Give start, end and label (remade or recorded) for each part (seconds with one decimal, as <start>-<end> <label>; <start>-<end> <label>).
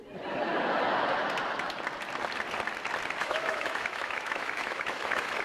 0.0-3.2 recorded; 3.2-5.4 remade